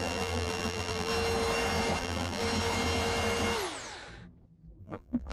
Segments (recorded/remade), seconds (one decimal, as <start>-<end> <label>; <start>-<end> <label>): 0.0-1.1 remade; 1.1-2.0 recorded; 2.0-2.4 remade; 2.4-4.8 recorded; 4.8-5.3 remade